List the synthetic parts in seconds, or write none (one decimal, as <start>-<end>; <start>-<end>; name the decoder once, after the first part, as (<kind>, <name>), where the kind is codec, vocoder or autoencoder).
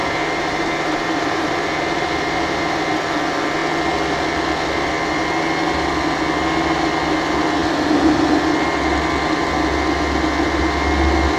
0.0-2.8 (vocoder, BigVGAN v2)